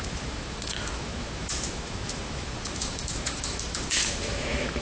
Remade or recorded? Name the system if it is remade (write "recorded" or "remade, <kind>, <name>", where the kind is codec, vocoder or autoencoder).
remade, autoencoder, DAC-VAE